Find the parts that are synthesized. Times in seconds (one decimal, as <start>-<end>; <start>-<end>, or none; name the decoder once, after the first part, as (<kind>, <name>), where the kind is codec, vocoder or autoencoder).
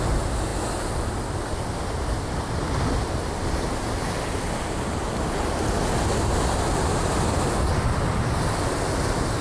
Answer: none